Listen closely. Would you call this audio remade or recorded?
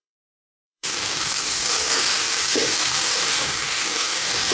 remade